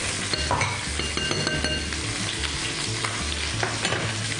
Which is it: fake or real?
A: real